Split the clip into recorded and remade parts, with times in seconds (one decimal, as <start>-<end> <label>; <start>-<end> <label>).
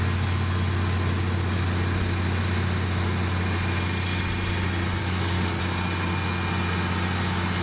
0.0-5.0 recorded; 5.0-5.6 remade; 5.6-7.6 recorded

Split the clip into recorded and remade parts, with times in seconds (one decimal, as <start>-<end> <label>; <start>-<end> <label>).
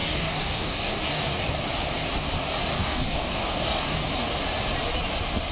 0.0-1.6 remade; 1.6-2.7 recorded; 2.7-4.0 remade; 4.0-5.5 recorded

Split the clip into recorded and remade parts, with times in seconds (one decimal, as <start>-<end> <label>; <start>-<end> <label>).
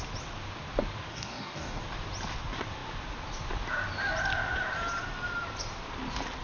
0.0-1.1 recorded; 1.1-1.8 remade; 1.8-6.4 recorded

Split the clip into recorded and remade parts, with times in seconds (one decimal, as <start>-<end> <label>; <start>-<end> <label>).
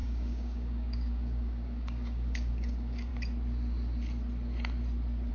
0.0-3.1 remade; 3.1-5.3 recorded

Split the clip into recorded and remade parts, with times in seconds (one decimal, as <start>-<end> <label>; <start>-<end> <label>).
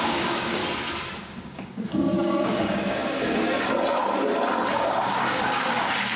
0.0-0.6 remade; 0.6-1.2 recorded; 1.2-3.7 remade; 3.7-4.7 recorded; 4.7-6.2 remade